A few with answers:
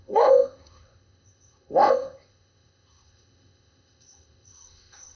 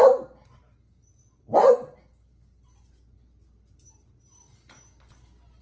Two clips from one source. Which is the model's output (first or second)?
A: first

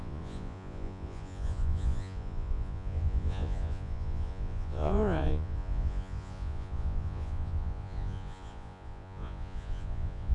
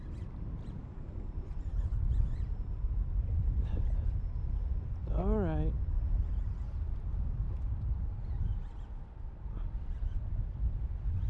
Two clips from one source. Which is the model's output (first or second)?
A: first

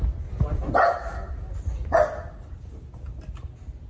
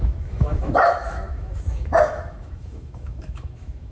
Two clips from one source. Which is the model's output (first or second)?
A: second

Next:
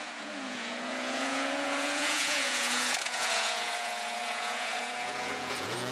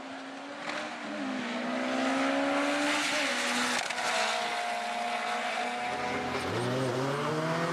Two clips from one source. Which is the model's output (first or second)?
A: first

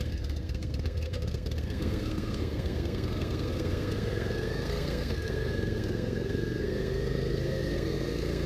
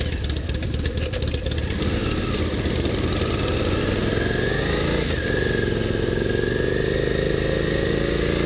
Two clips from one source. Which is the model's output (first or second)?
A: first